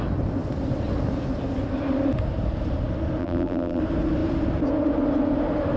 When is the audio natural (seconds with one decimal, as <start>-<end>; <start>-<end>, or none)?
0.0-3.2; 3.8-5.8